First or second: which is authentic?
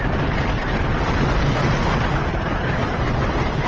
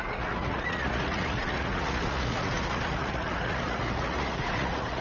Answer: first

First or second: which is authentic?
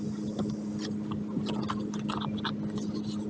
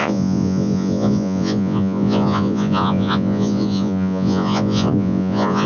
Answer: first